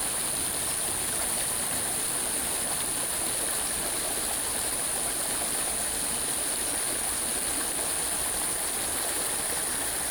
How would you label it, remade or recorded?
recorded